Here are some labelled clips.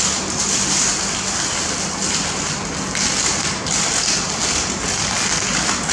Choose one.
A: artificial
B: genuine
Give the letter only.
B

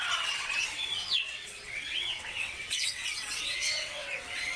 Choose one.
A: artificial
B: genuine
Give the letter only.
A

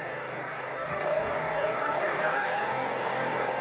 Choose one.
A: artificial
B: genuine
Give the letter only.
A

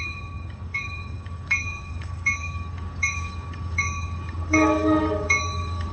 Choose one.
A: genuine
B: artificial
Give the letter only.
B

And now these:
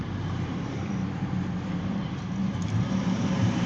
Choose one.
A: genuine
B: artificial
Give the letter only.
B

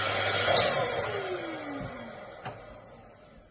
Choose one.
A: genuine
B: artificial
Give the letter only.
A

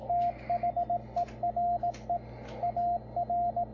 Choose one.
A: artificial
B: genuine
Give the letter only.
B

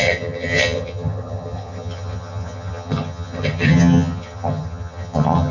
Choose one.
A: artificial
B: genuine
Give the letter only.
A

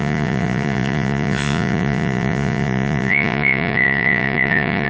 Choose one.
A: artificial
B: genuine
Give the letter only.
A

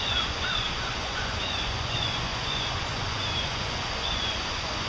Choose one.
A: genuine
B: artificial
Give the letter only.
B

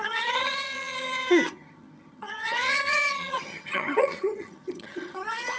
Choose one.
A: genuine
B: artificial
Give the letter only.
B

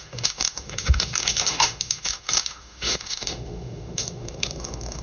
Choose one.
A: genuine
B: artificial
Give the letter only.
B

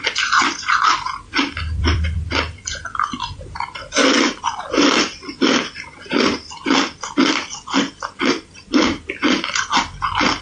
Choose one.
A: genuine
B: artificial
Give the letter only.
B